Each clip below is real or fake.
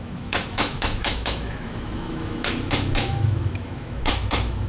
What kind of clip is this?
fake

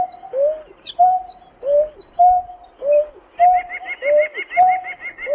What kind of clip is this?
real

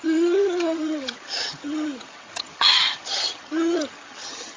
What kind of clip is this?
fake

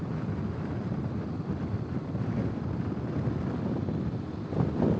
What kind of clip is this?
real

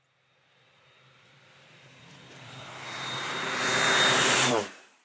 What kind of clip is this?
fake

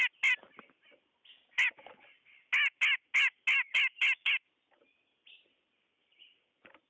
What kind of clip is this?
real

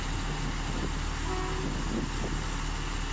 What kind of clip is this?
real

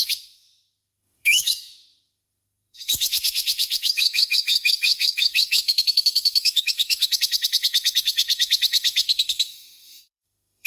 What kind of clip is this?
fake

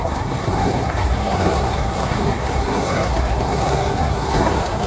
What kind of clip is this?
fake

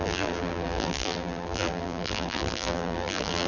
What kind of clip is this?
fake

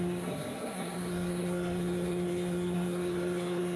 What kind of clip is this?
fake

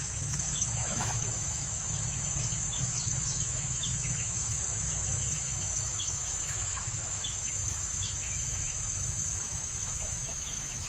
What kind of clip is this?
fake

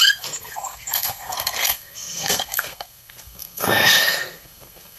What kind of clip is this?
fake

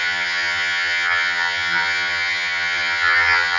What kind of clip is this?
fake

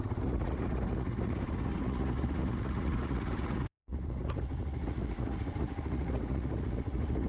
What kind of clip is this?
fake